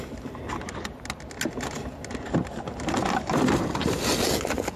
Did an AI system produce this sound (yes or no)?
no